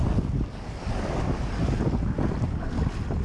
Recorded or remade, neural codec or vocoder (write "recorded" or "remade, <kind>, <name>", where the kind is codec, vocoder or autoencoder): recorded